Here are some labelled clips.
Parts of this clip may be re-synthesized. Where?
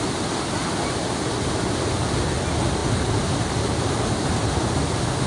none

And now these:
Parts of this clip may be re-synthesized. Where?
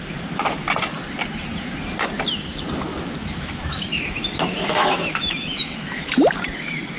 2.9-6.1 (autoencoder, DAC-VAE)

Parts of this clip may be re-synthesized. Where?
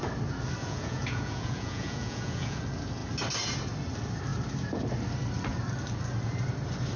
0.6-2.6 (vocoder, Vocos)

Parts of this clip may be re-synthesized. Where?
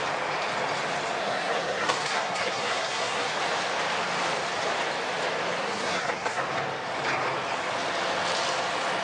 1.2-3.4 (codec, SNAC); 5.6-6.4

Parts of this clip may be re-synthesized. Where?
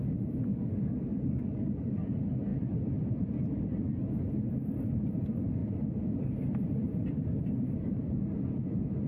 0.5-1.8 (codec, DAC)